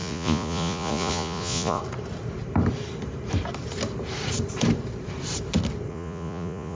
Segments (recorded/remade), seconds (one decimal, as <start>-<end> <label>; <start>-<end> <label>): 0.0-1.8 remade; 1.8-5.9 recorded; 5.9-6.8 remade